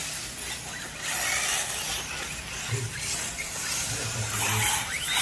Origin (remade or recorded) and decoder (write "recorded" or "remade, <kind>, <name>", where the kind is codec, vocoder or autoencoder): recorded